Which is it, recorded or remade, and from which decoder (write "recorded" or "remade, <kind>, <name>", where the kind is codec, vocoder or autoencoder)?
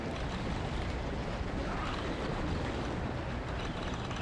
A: recorded